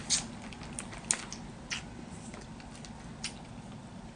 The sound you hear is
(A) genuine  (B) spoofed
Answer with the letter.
A